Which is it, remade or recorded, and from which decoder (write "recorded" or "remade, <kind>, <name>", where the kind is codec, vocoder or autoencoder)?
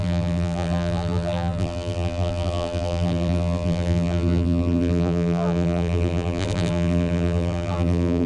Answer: remade, vocoder, BigVGAN v2